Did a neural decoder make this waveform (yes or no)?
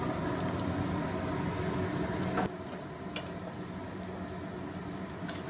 no